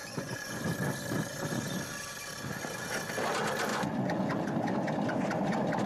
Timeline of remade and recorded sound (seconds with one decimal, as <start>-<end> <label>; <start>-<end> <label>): 0.0-0.6 remade; 0.6-3.7 recorded; 3.7-4.4 remade; 4.4-5.9 recorded